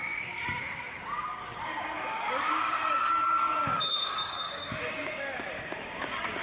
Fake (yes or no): yes